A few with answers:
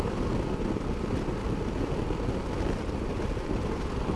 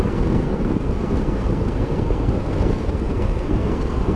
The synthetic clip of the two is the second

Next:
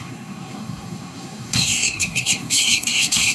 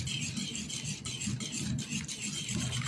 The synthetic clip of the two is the first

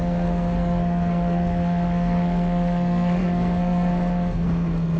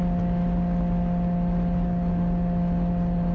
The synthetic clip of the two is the first